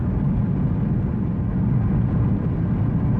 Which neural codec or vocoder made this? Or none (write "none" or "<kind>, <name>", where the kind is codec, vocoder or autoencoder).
none